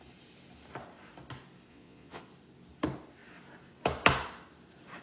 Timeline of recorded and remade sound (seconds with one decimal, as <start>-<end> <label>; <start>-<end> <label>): 0.0-1.7 recorded; 1.7-2.2 remade; 2.2-5.0 recorded